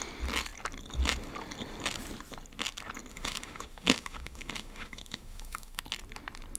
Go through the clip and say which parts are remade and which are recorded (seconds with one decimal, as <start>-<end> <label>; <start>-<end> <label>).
0.0-3.1 recorded; 3.1-5.8 remade; 5.8-6.6 recorded